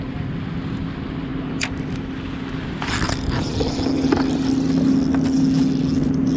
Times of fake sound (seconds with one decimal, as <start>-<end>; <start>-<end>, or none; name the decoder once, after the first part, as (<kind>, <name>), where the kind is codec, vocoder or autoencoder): none